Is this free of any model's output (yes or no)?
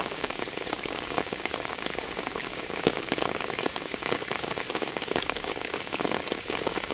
no